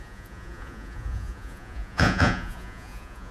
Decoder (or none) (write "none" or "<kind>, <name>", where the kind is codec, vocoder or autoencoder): vocoder, Vocos